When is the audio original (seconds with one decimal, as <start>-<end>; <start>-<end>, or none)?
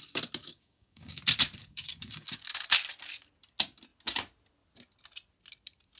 0.0-0.4; 1.2-1.6; 2.5-6.0